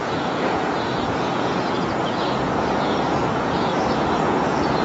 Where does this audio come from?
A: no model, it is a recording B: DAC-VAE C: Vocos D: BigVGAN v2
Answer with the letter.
C